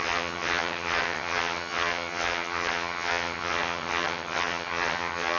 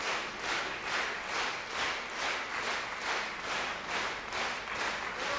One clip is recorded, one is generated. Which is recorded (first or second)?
second